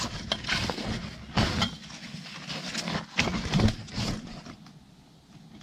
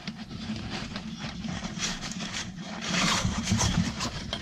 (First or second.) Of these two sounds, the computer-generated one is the second